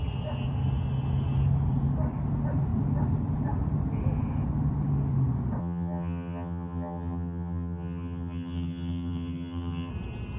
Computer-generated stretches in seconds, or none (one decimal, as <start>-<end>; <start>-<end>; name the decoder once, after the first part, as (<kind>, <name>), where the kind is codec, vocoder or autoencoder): 5.6-9.9 (vocoder, HiFi-GAN)